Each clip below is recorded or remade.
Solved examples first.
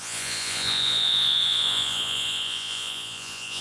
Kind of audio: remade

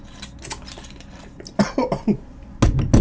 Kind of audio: recorded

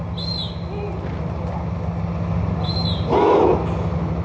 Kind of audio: recorded